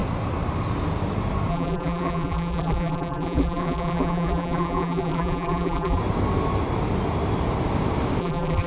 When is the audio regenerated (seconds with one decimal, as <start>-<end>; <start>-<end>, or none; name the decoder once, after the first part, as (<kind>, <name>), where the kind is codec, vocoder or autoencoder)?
1.5-6.0 (vocoder, BigVGAN v2); 8.2-8.7